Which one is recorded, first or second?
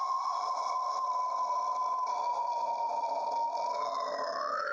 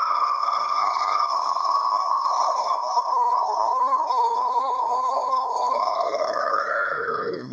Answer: first